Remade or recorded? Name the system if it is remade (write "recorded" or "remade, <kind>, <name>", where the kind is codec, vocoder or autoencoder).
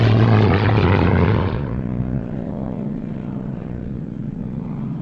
remade, vocoder, Vocos